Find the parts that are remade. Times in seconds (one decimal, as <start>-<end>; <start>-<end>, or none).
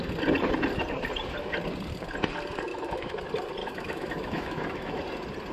2.7-3.2; 3.6-5.0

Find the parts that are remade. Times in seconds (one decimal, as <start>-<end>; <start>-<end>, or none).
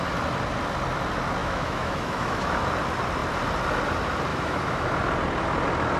1.4-2.7; 4.3-4.9